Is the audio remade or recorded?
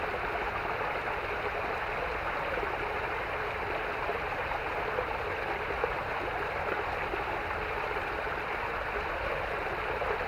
recorded